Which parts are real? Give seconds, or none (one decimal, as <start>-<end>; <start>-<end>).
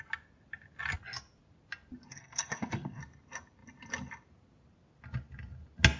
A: 0.0-2.1; 3.0-6.0